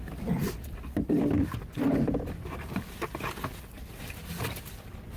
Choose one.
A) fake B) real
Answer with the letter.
A